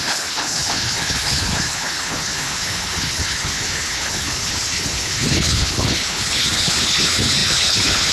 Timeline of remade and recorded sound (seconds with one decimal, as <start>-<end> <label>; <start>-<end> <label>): 0.0-8.1 remade